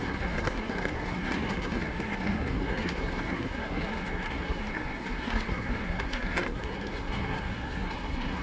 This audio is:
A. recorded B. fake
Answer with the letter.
B